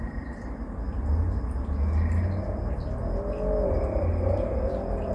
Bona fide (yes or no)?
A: yes